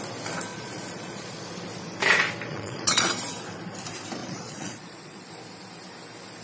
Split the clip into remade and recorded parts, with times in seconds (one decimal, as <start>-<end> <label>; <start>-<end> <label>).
0.0-0.5 recorded; 0.5-1.4 remade; 1.4-2.5 recorded; 2.5-3.1 remade; 3.1-4.2 recorded; 4.2-5.3 remade; 5.3-6.4 recorded